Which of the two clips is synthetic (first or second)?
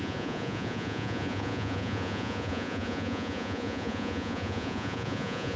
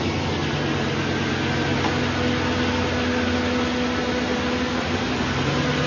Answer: first